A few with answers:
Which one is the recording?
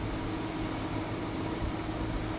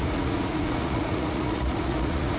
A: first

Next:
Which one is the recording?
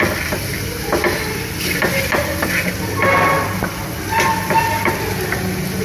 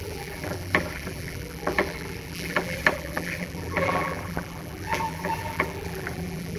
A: first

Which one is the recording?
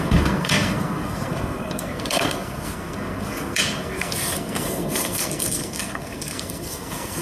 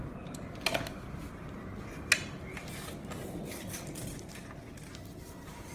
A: second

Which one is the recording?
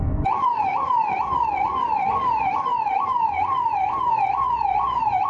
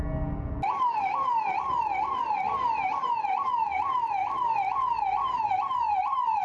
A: second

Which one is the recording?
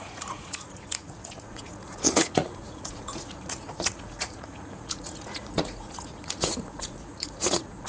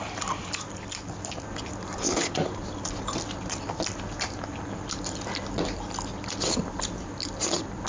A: second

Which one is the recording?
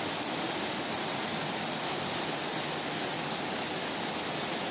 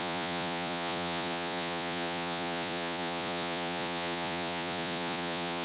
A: first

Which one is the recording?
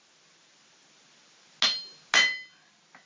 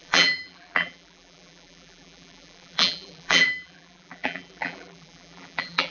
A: first